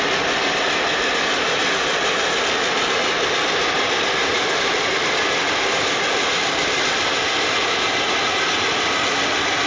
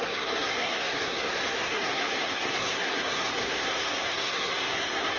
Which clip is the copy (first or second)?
second